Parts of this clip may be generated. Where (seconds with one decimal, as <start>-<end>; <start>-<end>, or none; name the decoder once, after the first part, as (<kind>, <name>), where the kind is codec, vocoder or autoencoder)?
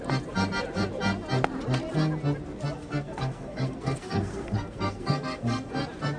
2.8-5.8 (codec, SNAC)